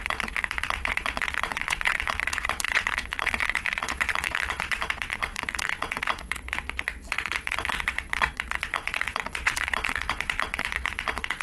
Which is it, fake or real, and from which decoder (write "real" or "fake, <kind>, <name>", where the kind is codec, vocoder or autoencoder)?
fake, vocoder, WaveNeXt